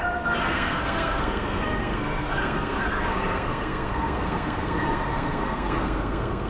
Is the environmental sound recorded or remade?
remade